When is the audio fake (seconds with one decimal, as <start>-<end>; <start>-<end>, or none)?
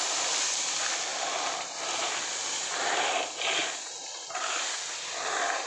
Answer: none